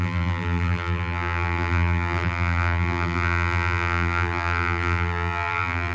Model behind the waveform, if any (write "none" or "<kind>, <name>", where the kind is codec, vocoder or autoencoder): vocoder, BigVGAN v2